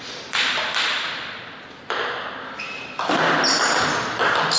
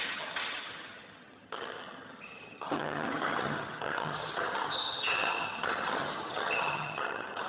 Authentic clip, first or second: first